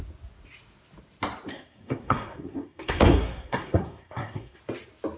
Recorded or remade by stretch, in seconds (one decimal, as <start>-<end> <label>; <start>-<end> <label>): 0.0-1.5 recorded; 1.5-4.6 remade; 4.6-5.2 recorded

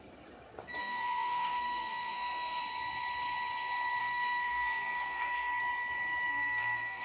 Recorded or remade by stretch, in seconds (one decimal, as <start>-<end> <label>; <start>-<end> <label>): 0.0-0.8 recorded; 0.8-2.6 remade; 2.6-4.0 recorded; 4.0-5.6 remade; 5.6-6.3 recorded; 6.3-7.0 remade

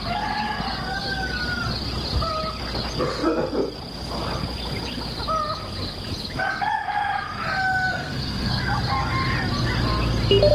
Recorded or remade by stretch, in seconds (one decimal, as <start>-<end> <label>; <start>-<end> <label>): 0.0-8.0 recorded; 8.0-8.6 remade; 8.6-10.5 recorded

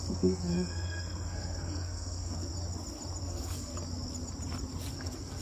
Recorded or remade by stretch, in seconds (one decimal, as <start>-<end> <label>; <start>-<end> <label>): 0.0-2.5 remade; 2.5-3.2 recorded; 3.2-3.7 remade; 3.7-4.9 recorded; 4.9-5.4 remade

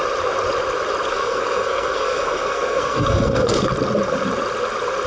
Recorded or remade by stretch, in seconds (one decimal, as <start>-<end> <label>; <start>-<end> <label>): 0.0-1.1 recorded; 1.1-3.7 remade; 3.7-5.1 recorded

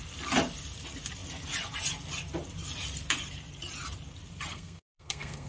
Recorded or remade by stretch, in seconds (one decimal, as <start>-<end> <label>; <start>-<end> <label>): 0.0-4.5 recorded; 4.5-5.5 remade